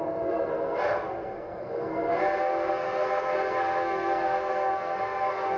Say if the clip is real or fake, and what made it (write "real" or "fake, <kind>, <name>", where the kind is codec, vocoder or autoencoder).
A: fake, codec, SNAC